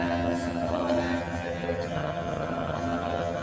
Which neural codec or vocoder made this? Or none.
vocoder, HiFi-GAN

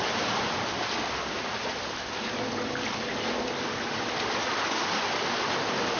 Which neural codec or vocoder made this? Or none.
none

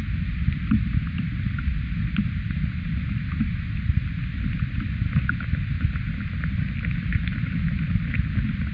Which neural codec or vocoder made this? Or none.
none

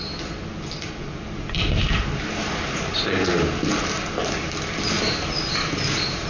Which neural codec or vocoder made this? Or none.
none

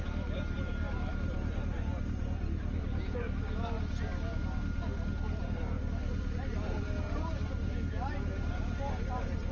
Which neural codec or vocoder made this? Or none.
none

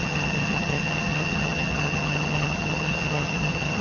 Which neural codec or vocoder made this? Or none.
vocoder, HiFi-GAN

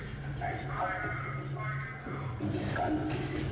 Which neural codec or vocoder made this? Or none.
none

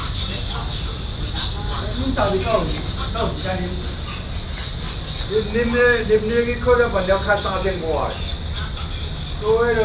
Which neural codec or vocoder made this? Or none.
none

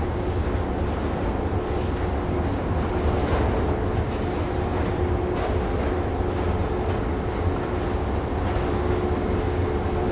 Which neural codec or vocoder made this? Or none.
none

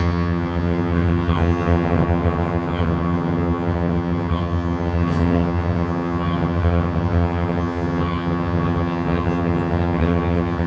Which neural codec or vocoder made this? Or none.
vocoder, HiFi-GAN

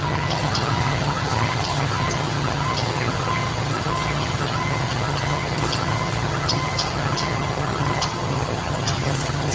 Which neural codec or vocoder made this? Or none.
vocoder, HiFi-GAN